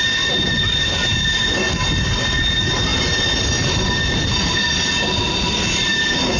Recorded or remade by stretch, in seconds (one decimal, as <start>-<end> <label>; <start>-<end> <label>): 0.0-6.4 recorded